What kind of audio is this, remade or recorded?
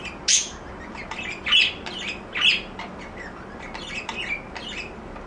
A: recorded